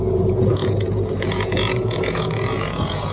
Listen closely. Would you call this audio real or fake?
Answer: fake